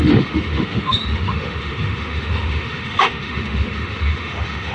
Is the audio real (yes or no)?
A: no